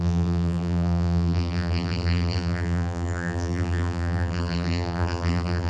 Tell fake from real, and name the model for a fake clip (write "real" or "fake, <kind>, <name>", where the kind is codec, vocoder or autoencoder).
fake, vocoder, BigVGAN v2